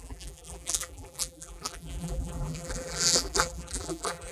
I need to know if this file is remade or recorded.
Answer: remade